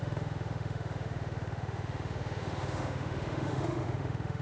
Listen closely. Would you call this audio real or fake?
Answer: fake